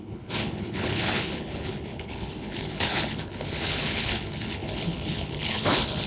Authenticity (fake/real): fake